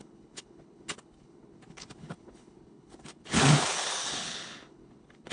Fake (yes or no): yes